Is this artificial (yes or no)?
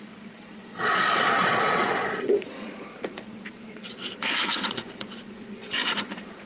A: yes